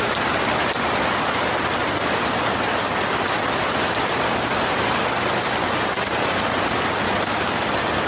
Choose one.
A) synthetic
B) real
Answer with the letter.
A